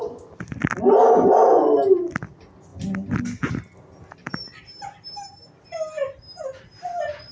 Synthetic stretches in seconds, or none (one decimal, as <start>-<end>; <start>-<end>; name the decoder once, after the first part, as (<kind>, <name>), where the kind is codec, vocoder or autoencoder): none